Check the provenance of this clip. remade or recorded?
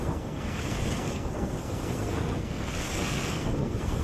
remade